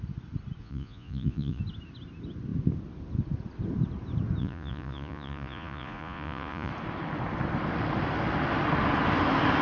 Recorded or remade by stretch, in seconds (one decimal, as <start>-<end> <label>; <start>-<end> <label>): 0.0-0.6 recorded; 0.6-1.6 remade; 1.6-4.4 recorded; 4.4-6.7 remade; 6.7-9.6 recorded

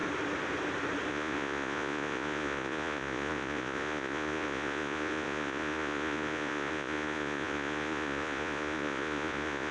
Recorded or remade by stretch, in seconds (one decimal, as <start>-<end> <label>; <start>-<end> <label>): 0.0-1.1 recorded; 1.1-9.7 remade

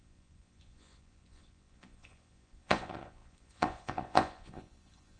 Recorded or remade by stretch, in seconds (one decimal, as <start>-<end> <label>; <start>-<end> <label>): 0.0-5.2 remade

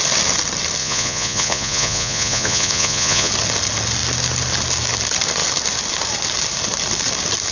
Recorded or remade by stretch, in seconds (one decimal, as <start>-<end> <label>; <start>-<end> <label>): 0.0-0.8 recorded; 0.8-3.3 remade; 3.3-7.5 recorded